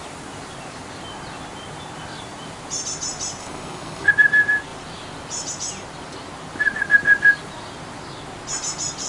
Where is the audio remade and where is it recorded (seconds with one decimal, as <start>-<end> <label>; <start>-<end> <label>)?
0.0-3.4 recorded; 3.4-4.1 remade; 4.1-9.1 recorded